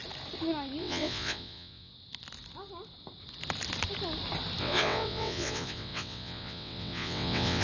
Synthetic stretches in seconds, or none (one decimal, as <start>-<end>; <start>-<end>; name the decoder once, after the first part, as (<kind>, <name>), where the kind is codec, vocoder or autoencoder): 0.8-1.9 (vocoder, WaveNeXt); 4.6-7.6